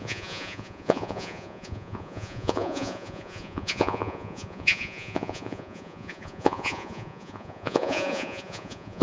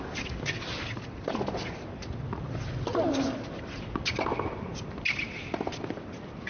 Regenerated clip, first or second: first